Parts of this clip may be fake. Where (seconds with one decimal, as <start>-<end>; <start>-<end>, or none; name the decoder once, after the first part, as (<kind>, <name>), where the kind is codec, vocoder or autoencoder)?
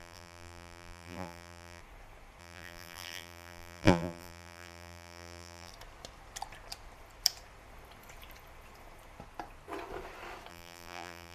0.0-1.8 (vocoder, BigVGAN v2); 2.4-5.7; 10.5-11.3